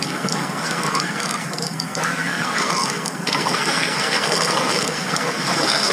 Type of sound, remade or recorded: remade